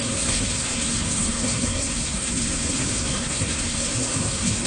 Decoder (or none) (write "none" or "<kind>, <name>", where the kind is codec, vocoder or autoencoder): codec, SNAC